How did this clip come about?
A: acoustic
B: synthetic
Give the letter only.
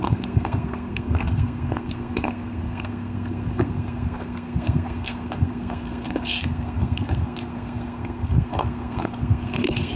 B